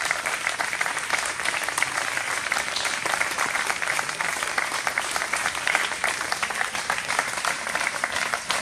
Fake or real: fake